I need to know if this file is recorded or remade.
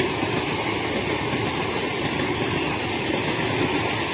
recorded